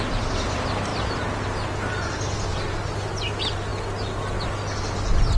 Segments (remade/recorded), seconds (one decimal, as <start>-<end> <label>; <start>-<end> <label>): 0.0-5.4 recorded